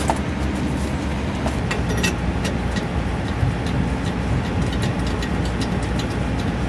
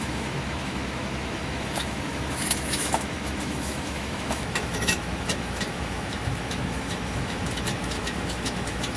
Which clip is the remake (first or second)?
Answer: second